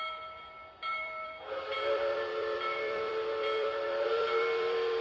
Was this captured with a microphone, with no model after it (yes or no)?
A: no